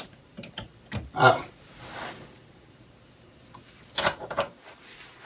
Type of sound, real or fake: fake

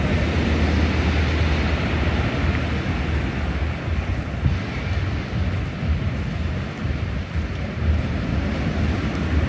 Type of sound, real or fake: real